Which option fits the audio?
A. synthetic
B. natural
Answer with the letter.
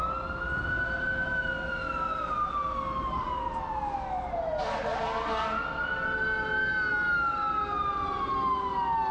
B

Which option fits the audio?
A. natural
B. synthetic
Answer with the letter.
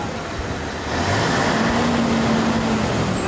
A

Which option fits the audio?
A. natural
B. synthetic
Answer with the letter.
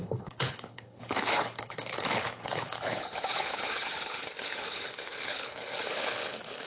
B